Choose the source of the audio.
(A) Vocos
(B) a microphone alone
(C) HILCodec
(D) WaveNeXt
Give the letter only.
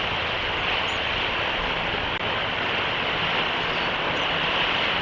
B